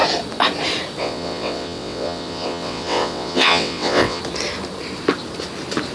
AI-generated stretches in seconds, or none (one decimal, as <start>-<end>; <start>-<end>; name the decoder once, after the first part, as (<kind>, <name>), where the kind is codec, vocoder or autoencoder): 1.0-4.2 (vocoder, WaveNeXt)